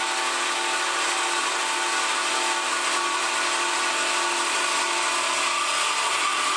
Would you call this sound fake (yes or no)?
no